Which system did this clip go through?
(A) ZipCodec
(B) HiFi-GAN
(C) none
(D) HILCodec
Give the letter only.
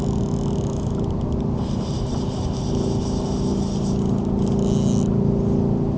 C